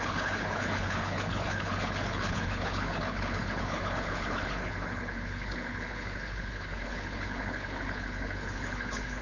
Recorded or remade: remade